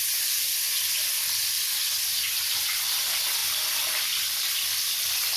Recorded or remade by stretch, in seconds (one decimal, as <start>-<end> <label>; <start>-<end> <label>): 0.0-5.4 recorded